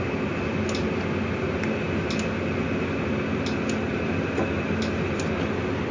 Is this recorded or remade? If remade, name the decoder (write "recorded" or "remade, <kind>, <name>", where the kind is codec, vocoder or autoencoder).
recorded